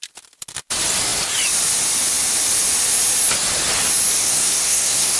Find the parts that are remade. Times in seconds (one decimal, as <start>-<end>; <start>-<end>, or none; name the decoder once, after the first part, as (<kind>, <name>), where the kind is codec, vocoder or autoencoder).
4.2-5.2 (codec, SNAC)